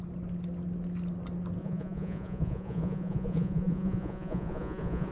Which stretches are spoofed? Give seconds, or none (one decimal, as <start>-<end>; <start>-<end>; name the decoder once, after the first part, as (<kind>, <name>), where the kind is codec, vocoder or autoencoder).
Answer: 1.6-5.1 (vocoder, Vocos)